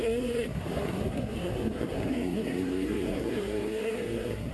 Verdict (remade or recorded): remade